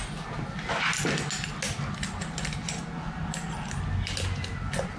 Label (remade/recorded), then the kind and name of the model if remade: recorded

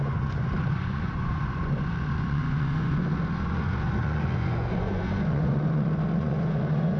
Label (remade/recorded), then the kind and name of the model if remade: remade, vocoder, Vocos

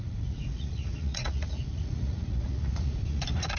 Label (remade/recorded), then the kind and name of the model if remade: remade, vocoder, Vocos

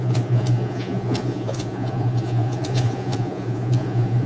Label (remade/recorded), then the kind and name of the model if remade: remade, vocoder, Vocos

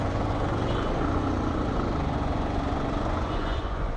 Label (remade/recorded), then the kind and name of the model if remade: remade, vocoder, Vocos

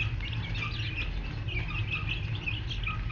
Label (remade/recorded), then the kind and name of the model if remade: recorded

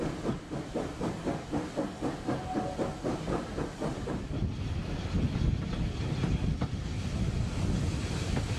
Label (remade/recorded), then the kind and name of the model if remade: recorded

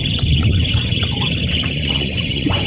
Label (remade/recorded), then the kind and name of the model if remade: remade, vocoder, Vocos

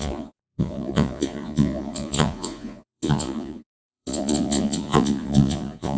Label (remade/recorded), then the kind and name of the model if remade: remade, vocoder, Vocos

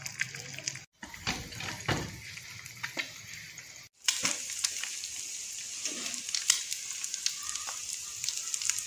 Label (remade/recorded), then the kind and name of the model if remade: recorded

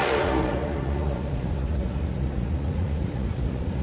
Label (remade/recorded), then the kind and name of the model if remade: remade, vocoder, Vocos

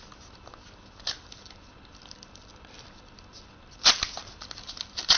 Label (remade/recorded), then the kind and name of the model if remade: recorded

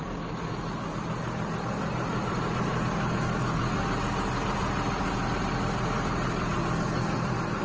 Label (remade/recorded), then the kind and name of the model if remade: recorded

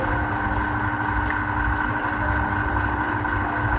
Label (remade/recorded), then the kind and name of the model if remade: recorded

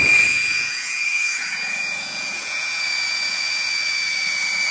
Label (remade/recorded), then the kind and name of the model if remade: remade, vocoder, Vocos